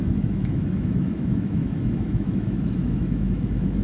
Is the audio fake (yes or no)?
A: yes